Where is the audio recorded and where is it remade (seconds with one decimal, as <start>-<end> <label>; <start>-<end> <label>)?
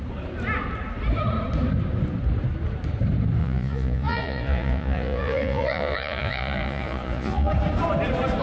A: 0.0-3.4 recorded; 3.4-7.5 remade; 7.5-8.4 recorded